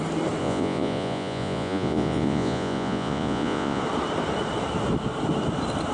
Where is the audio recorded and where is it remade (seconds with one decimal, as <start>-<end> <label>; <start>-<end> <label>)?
0.0-0.4 recorded; 0.4-3.8 remade; 3.8-5.9 recorded